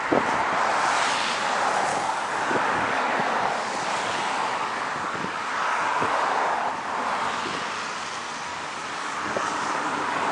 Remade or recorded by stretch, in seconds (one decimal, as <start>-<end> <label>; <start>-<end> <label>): 0.0-1.9 recorded; 1.9-6.7 remade; 6.7-8.5 recorded; 8.5-10.3 remade